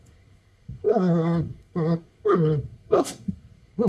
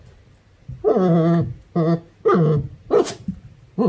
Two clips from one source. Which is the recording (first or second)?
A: second